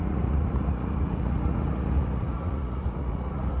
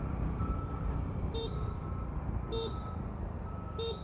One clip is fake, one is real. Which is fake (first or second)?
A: first